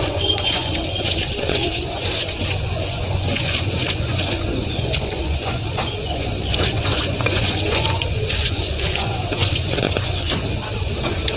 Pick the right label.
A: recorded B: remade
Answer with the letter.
B